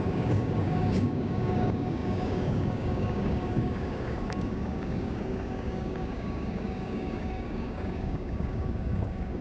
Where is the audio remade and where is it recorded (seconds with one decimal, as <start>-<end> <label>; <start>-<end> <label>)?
0.0-9.4 remade